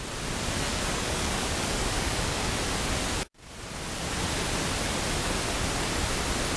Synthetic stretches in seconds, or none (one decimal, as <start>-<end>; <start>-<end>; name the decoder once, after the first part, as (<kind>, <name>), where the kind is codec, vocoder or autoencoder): 0.7-2.5 (codec, DAC)